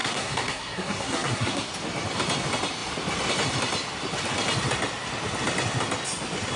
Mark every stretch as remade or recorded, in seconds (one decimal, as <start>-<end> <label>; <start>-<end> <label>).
0.0-1.7 remade; 1.7-6.6 recorded